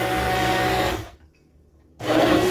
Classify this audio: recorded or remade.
remade